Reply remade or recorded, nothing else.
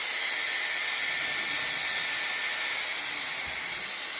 recorded